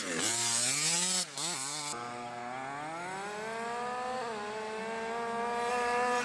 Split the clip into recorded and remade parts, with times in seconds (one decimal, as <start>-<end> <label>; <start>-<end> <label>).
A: 0.0-2.4 remade; 2.4-5.7 recorded; 5.7-6.2 remade